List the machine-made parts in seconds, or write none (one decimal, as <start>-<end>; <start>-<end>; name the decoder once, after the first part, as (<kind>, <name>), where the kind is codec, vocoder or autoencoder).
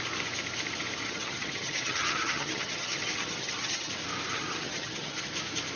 1.0-3.9 (vocoder, HiFi-GAN); 4.3-5.3